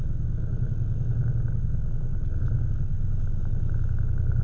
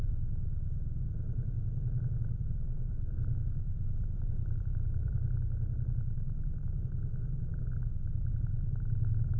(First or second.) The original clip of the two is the first